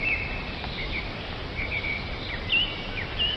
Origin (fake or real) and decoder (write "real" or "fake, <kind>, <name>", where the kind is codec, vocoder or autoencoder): real